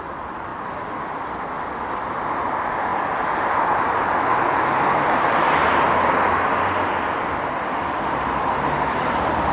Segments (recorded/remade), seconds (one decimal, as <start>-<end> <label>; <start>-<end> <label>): 0.0-9.5 recorded